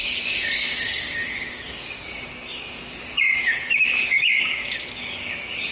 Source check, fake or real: fake